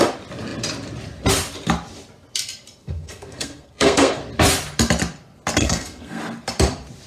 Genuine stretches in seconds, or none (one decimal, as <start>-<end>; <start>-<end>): 0.0-2.8; 4.2-5.6; 6.2-7.1